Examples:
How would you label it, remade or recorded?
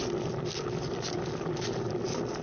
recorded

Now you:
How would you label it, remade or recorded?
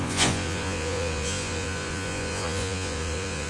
remade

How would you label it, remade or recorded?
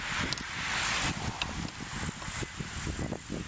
recorded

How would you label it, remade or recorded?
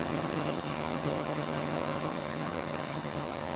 remade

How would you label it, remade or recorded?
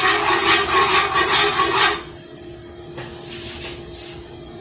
recorded